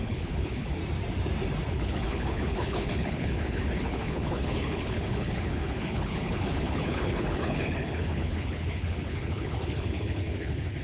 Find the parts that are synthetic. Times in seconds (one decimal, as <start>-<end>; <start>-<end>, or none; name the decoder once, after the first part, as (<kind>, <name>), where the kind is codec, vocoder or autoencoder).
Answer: 0.0-0.8 (codec, HILCodec); 1.7-10.8